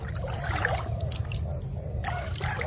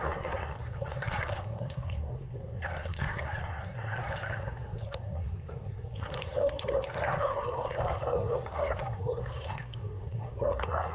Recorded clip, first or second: first